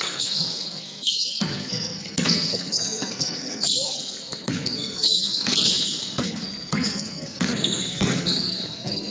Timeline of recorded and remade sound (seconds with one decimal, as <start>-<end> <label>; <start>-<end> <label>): 0.0-9.1 remade